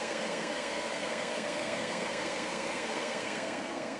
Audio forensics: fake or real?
fake